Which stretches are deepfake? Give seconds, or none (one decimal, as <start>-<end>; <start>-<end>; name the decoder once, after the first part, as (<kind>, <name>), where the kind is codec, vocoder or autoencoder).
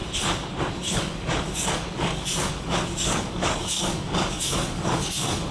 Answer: 0.6-5.5 (codec, DAC)